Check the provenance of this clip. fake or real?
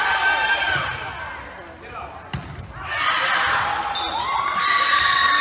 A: real